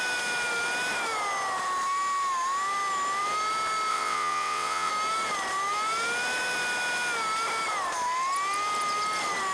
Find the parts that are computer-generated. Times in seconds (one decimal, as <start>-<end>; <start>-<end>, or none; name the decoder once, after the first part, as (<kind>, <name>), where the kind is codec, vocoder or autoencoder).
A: 3.9-4.9 (vocoder, WaveNeXt)